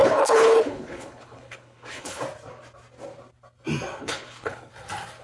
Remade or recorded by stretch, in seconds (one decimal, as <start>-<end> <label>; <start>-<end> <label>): 0.0-2.2 remade; 2.2-4.0 recorded; 4.0-4.7 remade; 4.7-5.2 recorded